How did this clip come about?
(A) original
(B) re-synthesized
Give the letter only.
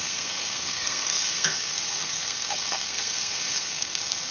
B